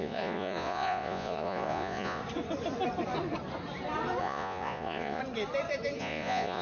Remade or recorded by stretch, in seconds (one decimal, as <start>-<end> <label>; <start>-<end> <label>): 0.0-2.2 remade; 2.2-4.2 recorded; 4.2-5.2 remade; 5.2-6.0 recorded; 6.0-6.6 remade